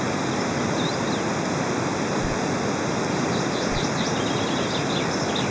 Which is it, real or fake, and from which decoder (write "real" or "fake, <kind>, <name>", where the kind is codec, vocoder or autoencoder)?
fake, vocoder, BigVGAN v2